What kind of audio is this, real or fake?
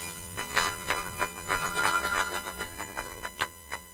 fake